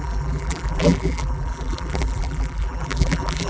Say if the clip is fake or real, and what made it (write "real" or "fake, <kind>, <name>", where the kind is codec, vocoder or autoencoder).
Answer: fake, vocoder, BigVGAN v2